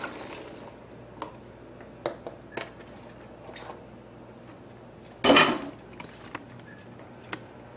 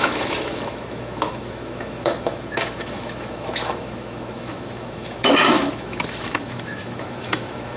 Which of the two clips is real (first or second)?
first